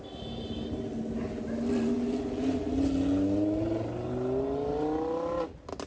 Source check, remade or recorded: recorded